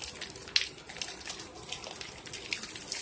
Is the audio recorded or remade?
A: recorded